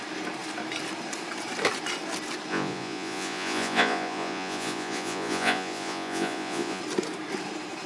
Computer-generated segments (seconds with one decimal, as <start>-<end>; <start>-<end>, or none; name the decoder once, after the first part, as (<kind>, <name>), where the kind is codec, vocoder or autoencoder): 2.5-6.8 (vocoder, Vocos)